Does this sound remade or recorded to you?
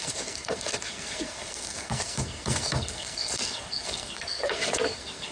remade